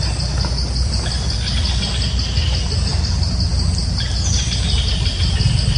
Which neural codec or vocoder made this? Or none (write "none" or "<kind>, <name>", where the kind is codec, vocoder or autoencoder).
none